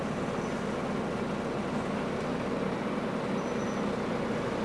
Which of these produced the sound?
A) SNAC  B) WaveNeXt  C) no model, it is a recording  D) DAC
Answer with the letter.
C